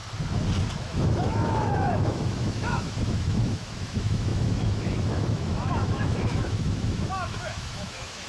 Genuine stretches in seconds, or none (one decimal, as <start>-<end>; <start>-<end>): 0.0-0.8